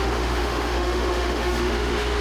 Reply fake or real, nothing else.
fake